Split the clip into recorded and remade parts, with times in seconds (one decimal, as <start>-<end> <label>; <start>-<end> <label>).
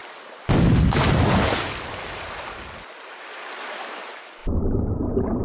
0.0-3.1 recorded; 3.1-5.4 remade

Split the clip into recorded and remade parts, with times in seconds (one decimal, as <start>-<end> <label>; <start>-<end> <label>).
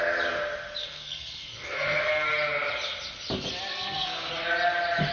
0.0-0.8 recorded; 0.8-2.1 remade; 2.1-3.7 recorded; 3.7-4.3 remade; 4.3-5.1 recorded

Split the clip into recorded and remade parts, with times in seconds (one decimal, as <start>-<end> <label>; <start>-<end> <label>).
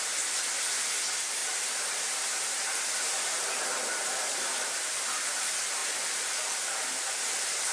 0.0-1.4 recorded; 1.4-3.6 remade; 3.6-5.8 recorded; 5.8-7.7 remade